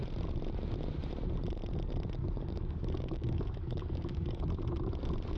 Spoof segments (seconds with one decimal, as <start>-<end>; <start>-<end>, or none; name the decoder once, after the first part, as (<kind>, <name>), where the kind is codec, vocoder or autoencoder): 2.2-4.4 (codec, DAC)